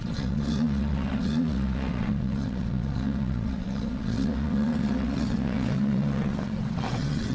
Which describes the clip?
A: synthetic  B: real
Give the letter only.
A